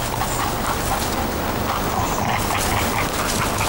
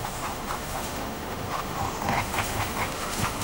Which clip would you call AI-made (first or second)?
second